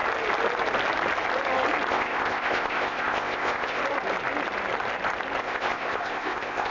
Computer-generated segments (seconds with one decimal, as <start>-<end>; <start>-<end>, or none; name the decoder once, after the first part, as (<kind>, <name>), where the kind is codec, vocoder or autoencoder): 1.9-3.8 (codec, ZipCodec); 5.4-6.7